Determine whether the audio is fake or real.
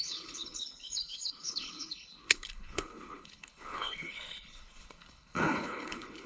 fake